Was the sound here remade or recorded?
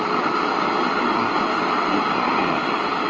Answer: recorded